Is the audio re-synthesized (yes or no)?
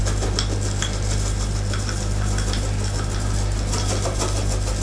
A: no